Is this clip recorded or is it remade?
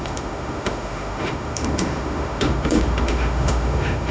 remade